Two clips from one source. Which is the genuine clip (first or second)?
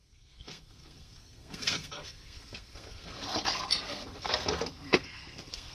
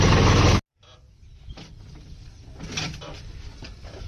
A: second